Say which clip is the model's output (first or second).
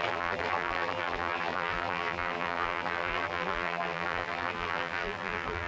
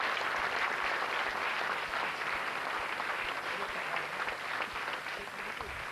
first